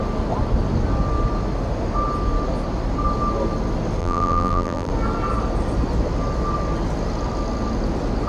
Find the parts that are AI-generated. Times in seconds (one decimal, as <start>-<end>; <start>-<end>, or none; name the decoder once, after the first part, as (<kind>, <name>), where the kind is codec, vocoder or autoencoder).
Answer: 4.0-4.9 (vocoder, BigVGAN v2)